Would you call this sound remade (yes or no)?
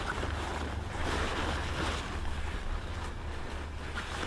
no